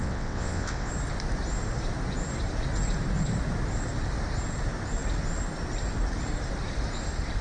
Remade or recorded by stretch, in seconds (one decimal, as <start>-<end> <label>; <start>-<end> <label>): 0.0-0.9 remade; 0.9-7.4 recorded